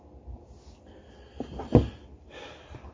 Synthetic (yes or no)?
no